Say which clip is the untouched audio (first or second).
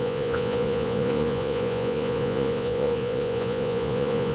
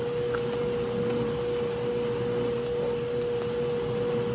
second